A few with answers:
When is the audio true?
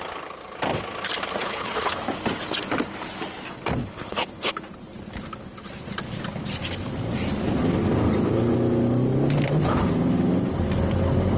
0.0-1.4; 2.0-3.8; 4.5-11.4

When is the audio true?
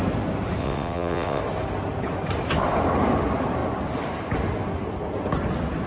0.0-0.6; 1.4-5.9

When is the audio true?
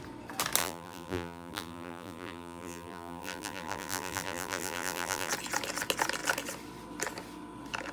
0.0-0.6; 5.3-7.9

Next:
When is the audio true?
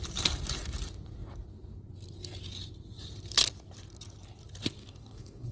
0.0-4.8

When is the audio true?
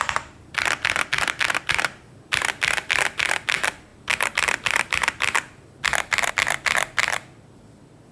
0.0-8.1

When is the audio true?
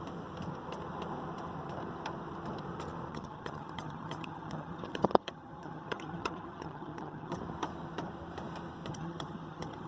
0.0-3.1; 7.4-8.9